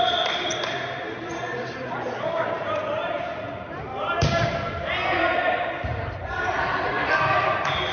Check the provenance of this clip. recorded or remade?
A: remade